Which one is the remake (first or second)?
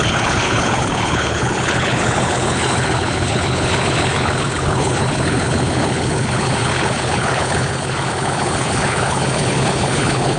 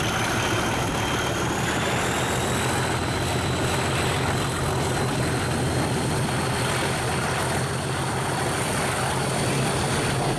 first